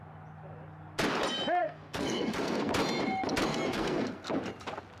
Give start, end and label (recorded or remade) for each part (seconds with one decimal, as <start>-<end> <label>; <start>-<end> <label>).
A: 0.0-1.6 recorded; 1.6-2.7 remade; 2.7-3.5 recorded; 3.5-4.3 remade; 4.3-5.0 recorded